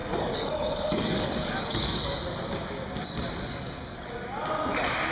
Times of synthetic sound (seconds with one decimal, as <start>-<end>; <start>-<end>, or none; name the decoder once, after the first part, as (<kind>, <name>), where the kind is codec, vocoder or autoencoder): 0.0-2.2 (codec, DAC); 3.5-4.1